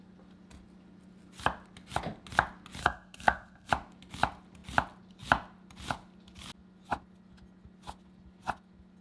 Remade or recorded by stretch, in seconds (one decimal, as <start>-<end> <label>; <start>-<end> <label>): 0.0-2.8 recorded; 2.8-3.7 remade; 3.7-9.0 recorded